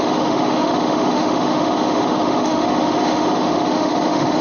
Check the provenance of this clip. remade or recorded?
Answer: remade